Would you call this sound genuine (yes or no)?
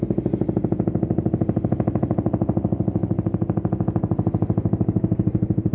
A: yes